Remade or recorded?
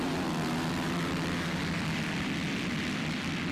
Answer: recorded